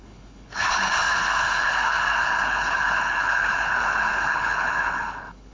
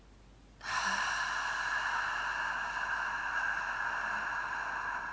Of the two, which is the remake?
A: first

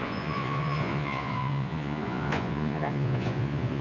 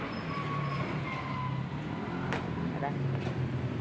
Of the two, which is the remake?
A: first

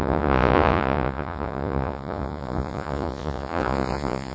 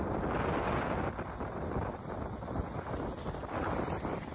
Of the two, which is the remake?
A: first